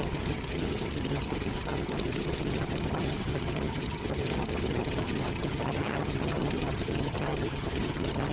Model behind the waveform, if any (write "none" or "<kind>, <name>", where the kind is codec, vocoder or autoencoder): vocoder, HiFi-GAN